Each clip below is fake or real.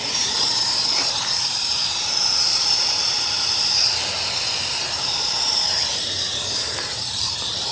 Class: fake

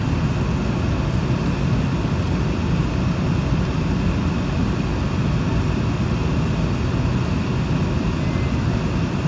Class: real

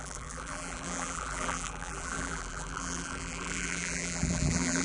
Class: fake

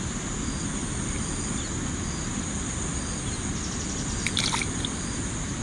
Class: real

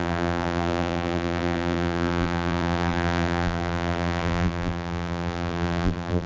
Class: fake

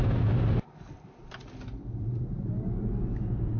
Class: real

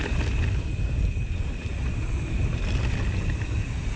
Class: real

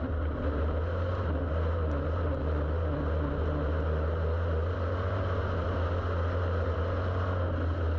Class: real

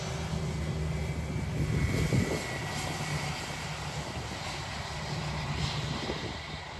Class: real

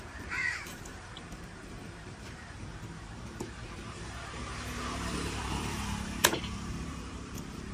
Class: fake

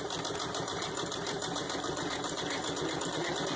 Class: fake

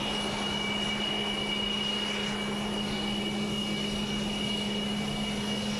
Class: real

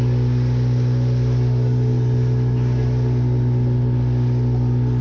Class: real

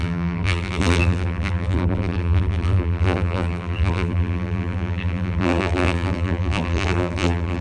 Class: fake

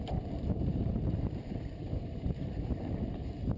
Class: fake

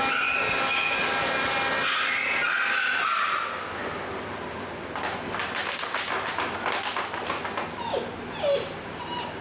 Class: real